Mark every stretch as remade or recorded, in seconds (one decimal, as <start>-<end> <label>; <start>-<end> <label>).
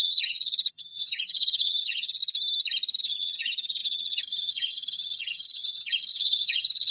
0.0-2.2 remade; 2.2-3.0 recorded; 3.0-6.9 remade